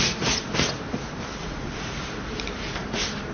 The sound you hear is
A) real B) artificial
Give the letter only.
B